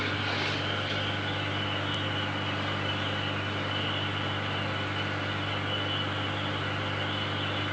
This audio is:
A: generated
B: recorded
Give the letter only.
B